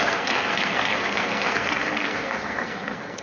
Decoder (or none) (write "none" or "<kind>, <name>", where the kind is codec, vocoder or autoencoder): codec, SNAC